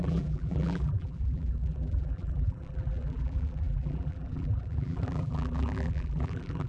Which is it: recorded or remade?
remade